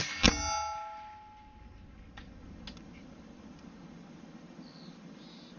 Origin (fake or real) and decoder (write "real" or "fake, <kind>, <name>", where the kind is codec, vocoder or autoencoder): real